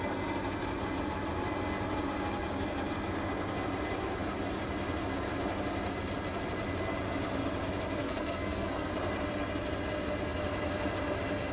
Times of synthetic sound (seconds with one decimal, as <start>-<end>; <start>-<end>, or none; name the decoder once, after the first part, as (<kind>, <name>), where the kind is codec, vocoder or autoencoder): 8.0-8.9 (codec, SNAC)